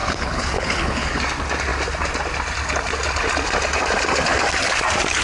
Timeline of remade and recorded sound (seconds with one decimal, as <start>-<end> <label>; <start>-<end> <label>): 0.0-1.2 remade; 1.2-5.2 recorded